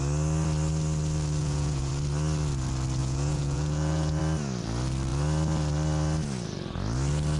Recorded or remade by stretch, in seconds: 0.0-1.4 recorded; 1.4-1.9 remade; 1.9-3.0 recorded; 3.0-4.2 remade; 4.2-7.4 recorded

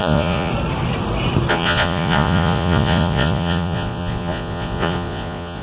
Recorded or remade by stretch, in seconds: 0.0-0.5 remade; 0.5-1.5 recorded; 1.5-5.6 remade

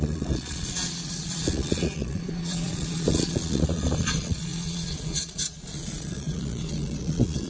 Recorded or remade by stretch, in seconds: 0.0-7.5 remade

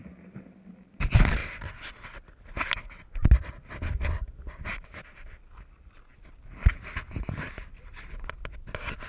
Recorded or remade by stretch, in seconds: 0.0-1.4 recorded; 1.4-1.9 remade; 1.9-9.1 recorded